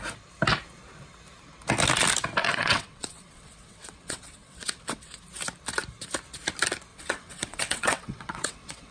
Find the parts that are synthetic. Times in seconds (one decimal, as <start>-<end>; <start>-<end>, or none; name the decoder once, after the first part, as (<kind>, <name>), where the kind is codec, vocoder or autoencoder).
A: 2.4-5.2 (vocoder, WaveNeXt); 6.9-8.9